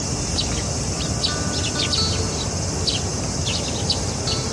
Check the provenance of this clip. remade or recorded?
recorded